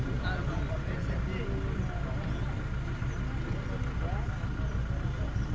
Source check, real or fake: real